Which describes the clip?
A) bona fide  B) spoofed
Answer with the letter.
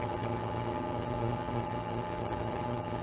B